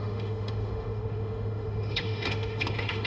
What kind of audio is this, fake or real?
fake